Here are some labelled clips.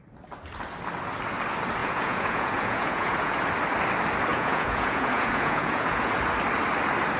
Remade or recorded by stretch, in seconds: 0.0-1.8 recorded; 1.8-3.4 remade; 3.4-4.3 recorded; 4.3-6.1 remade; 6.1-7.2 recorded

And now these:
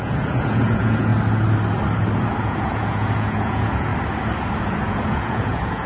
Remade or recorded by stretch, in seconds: 0.0-1.1 remade; 1.1-2.4 recorded; 2.4-3.9 remade; 3.9-4.6 recorded; 4.6-5.9 remade